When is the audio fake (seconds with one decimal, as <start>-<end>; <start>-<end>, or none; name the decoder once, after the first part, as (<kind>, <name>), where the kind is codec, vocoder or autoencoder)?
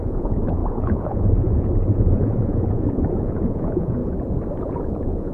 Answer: 0.0-4.0 (vocoder, Vocos); 4.6-5.3